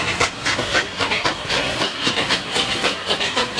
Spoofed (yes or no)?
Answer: yes